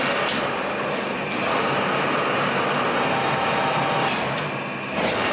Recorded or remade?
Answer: recorded